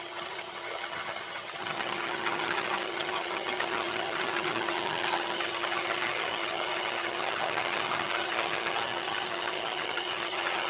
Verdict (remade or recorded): remade